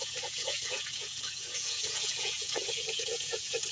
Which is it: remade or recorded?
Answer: remade